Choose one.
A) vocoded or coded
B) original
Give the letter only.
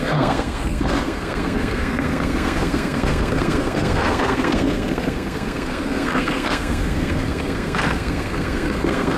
A